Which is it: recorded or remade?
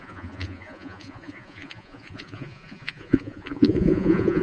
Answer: remade